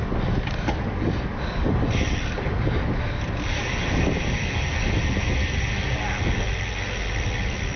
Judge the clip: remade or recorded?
recorded